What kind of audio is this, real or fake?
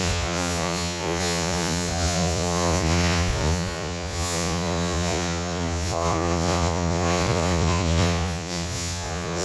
fake